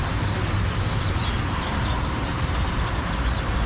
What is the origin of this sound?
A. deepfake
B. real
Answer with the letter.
B